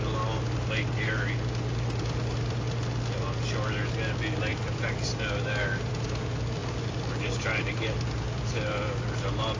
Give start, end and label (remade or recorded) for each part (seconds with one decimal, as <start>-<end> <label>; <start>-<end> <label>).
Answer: 0.0-9.6 recorded